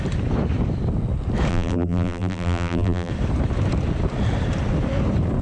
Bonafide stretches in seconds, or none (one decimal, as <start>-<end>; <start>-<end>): 0.0-1.5; 3.1-5.4